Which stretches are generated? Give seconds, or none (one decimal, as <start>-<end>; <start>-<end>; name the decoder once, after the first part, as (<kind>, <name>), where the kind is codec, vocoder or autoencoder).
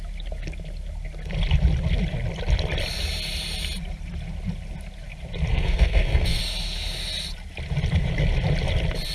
5.5-6.4 (codec, SNAC)